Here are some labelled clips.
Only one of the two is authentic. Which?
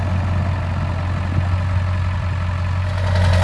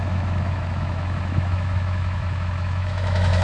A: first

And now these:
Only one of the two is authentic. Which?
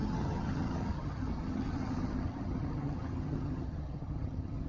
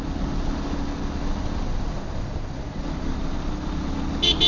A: second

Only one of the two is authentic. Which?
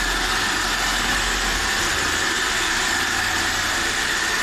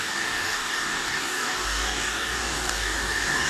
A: first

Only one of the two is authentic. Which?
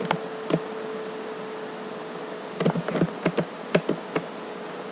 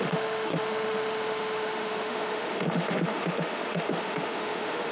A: first